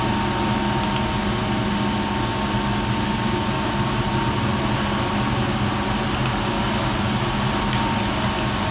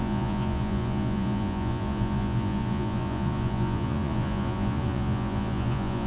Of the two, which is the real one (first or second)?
first